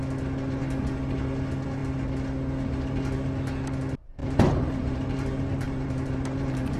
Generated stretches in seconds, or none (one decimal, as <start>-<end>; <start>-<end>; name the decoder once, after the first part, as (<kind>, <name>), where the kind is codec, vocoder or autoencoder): 4.2-6.8 (vocoder, BigVGAN v2)